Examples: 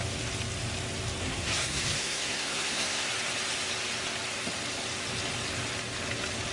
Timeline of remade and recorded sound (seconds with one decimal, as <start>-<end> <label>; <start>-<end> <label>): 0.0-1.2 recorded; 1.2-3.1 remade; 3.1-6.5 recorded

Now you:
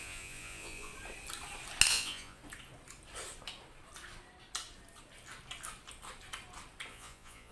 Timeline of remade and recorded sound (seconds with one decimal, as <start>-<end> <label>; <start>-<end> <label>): 0.0-0.9 remade; 0.9-1.9 recorded; 1.9-2.4 remade; 2.4-6.9 recorded; 6.9-7.5 remade

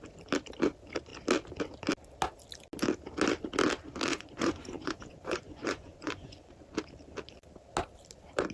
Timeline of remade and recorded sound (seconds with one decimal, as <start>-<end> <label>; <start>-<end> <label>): 0.0-4.1 recorded; 4.1-6.5 remade; 6.5-8.5 recorded

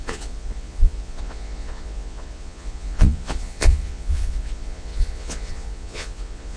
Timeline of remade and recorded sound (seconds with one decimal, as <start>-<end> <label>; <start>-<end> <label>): 0.0-6.6 remade

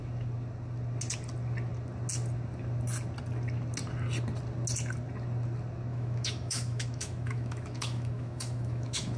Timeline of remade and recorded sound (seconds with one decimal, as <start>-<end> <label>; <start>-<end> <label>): 0.0-5.9 recorded; 5.9-9.2 remade